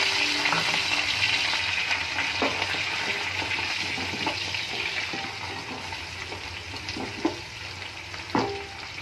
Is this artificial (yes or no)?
no